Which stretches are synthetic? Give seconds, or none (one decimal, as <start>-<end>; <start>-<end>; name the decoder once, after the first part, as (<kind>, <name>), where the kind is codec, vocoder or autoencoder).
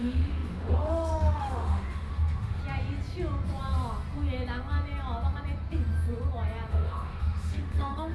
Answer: 0.0-2.6 (autoencoder, DAC-VAE); 6.7-8.1